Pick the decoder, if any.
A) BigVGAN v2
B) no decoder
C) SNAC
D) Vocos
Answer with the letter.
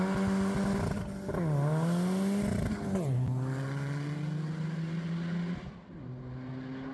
B